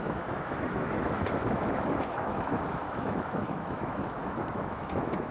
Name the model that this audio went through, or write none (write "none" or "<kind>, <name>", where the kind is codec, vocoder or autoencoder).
autoencoder, DAC-VAE